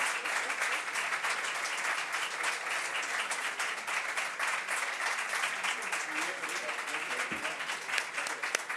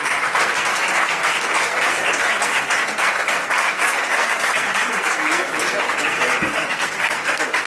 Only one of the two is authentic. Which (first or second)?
first